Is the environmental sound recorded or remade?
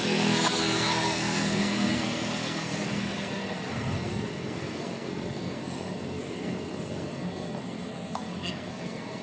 remade